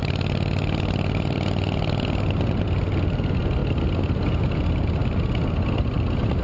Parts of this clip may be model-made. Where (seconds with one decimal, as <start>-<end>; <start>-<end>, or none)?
none

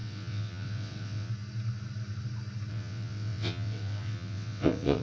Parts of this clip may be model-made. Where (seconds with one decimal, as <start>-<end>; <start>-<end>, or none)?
0.0-1.3; 2.7-5.0

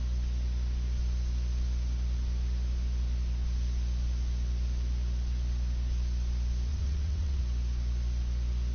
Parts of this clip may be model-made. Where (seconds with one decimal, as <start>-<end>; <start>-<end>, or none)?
6.7-7.4

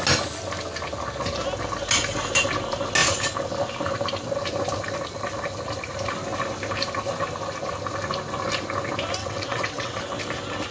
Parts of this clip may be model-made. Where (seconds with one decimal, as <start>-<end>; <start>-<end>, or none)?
9.2-10.0

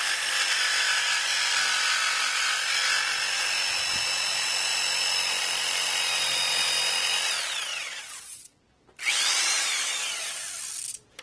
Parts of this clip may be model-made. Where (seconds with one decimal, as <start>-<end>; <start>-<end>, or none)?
7.7-8.6